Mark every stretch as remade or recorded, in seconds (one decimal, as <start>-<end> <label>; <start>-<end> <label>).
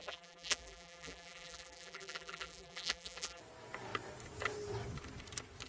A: 0.0-3.4 remade; 3.4-5.7 recorded